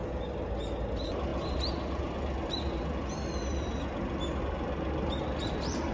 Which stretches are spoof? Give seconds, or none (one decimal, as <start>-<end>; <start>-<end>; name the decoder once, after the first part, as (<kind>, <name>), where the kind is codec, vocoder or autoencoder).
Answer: none